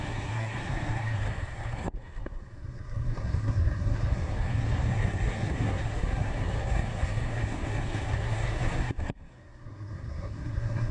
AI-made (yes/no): yes